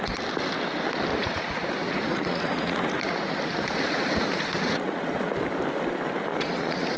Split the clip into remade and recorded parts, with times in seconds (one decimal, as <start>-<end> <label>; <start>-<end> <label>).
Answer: 0.0-1.1 recorded; 1.1-5.3 remade; 5.3-6.3 recorded; 6.3-7.0 remade